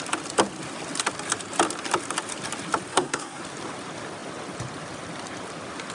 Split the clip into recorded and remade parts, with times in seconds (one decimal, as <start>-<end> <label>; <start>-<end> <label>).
0.0-2.9 recorded; 2.9-3.4 remade; 3.4-5.9 recorded